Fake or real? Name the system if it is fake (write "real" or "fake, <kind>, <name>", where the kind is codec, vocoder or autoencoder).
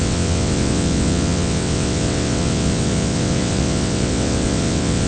fake, vocoder, WaveNeXt